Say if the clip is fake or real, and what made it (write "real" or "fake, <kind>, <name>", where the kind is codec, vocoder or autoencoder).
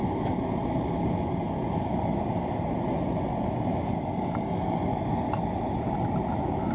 real